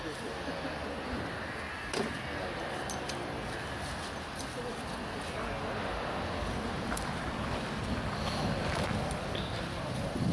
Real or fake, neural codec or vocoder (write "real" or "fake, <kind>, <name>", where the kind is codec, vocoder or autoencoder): real